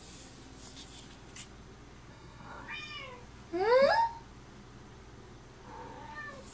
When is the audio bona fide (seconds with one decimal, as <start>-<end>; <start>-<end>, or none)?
0.0-2.1; 2.6-6.5